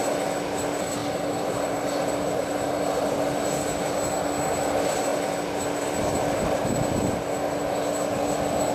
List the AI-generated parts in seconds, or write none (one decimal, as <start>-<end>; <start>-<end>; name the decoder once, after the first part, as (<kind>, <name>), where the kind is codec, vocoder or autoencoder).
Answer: 1.0-3.9 (vocoder, BigVGAN v2)